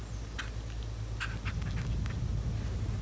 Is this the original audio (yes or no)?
yes